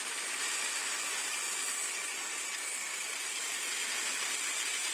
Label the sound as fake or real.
real